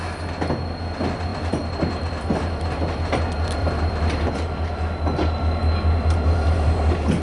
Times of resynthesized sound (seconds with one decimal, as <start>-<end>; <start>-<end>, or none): 1.3-2.7; 3.6-4.3